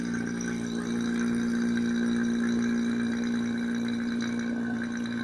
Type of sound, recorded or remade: recorded